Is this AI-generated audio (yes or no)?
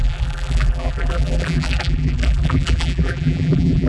yes